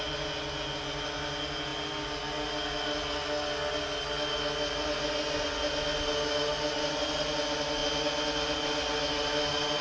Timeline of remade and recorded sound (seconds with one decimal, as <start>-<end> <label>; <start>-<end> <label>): 0.0-9.8 recorded